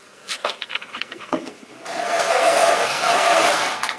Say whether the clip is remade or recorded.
remade